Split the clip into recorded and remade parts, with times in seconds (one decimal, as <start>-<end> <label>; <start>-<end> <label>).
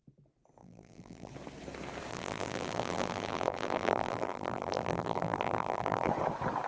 0.0-0.6 recorded; 0.6-1.3 remade; 1.3-2.1 recorded; 2.1-6.1 remade; 6.1-6.7 recorded